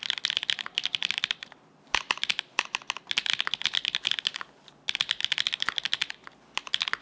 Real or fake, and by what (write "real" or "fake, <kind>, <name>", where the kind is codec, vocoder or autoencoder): real